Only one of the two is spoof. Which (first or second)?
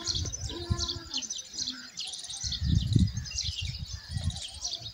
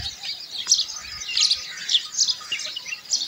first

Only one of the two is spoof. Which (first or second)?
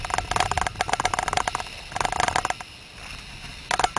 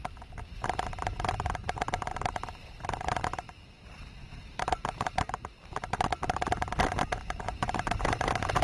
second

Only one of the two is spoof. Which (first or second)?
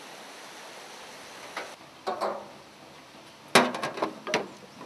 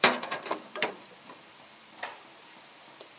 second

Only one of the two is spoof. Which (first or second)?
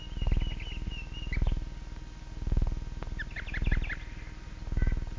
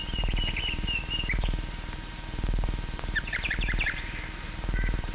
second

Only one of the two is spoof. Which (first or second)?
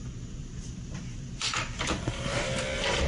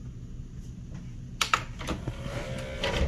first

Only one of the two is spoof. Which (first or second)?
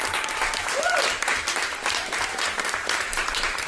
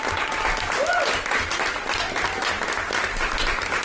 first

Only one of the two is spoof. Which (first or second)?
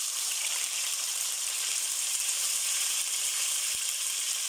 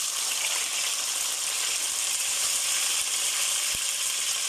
first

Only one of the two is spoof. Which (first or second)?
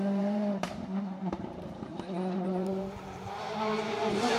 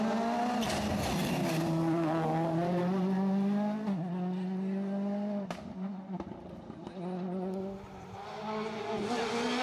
first